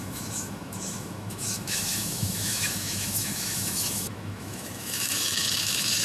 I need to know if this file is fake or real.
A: fake